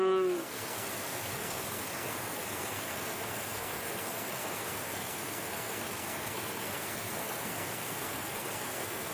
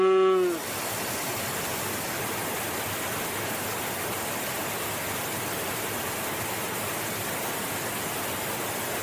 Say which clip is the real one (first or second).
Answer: second